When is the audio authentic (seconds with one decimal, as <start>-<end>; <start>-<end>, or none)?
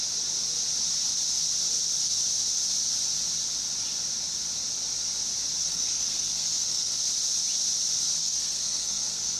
0.0-5.6; 7.0-8.2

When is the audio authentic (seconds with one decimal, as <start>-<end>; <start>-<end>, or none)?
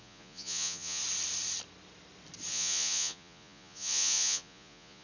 1.0-2.5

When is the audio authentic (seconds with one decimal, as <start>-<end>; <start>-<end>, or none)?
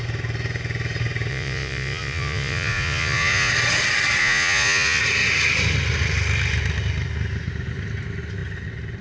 0.0-1.3; 3.5-4.2; 5.0-9.0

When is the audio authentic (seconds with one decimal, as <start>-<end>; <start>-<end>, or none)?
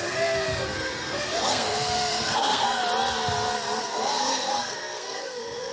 2.8-3.8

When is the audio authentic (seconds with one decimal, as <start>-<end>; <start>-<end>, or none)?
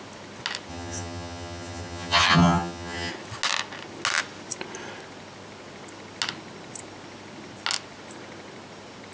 0.0-0.7; 3.1-9.1